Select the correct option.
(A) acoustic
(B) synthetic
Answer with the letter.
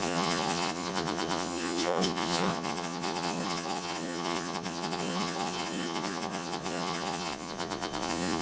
B